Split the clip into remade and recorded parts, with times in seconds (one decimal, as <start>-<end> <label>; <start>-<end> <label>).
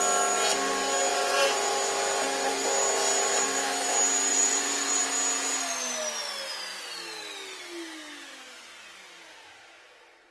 0.0-1.1 recorded; 1.1-1.7 remade; 1.7-4.3 recorded; 4.3-5.0 remade; 5.0-10.3 recorded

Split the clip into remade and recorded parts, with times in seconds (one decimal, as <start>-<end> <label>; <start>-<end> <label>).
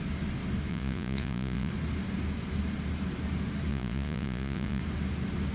0.0-0.7 recorded; 0.7-1.7 remade; 1.7-3.7 recorded; 3.7-4.8 remade; 4.8-5.5 recorded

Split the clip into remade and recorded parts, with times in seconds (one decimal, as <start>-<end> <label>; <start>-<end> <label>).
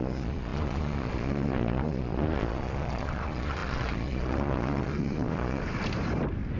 0.0-5.6 remade; 5.6-6.6 recorded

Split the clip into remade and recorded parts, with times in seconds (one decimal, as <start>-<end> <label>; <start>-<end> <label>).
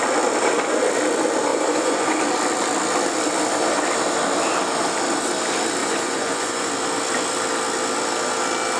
0.0-1.5 recorded; 1.5-2.2 remade; 2.2-5.8 recorded; 5.8-6.7 remade; 6.7-8.8 recorded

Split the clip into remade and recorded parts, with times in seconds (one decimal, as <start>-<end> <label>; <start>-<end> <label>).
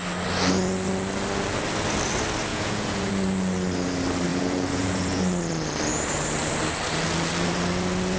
0.0-2.5 recorded; 2.5-3.1 remade; 3.1-4.3 recorded; 4.3-5.2 remade; 5.2-8.2 recorded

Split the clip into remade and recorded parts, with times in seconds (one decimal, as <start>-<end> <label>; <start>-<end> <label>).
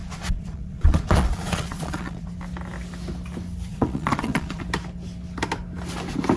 0.0-2.3 remade; 2.3-3.7 recorded; 3.7-4.6 remade; 4.6-6.4 recorded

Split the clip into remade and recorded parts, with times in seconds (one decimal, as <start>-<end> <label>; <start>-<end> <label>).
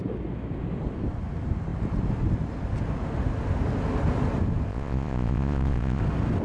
0.0-4.7 recorded; 4.7-6.0 remade; 6.0-6.4 recorded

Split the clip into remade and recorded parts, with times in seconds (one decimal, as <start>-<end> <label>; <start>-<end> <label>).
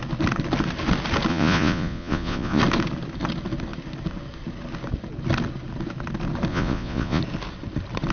0.0-1.3 recorded; 1.3-2.6 remade; 2.6-6.5 recorded; 6.5-7.2 remade; 7.2-8.1 recorded